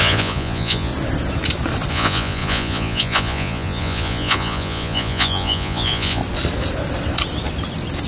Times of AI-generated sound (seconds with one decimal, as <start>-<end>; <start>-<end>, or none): 0.0-0.9; 1.9-6.2